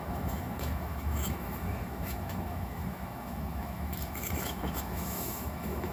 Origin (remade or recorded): remade